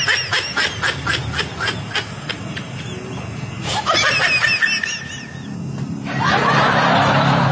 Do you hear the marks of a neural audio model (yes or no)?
no